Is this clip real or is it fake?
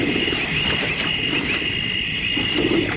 real